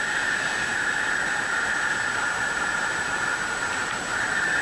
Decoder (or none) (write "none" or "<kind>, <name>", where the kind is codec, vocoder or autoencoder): none